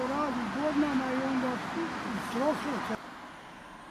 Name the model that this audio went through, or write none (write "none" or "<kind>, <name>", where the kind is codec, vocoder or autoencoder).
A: none